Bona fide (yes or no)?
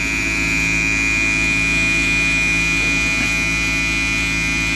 yes